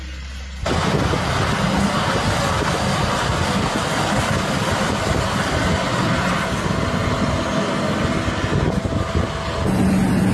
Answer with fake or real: real